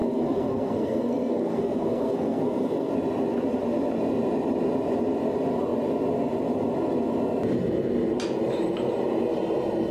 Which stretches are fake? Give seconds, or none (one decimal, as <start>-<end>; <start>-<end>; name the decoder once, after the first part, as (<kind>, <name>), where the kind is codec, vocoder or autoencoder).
0.0-2.9 (codec, SNAC)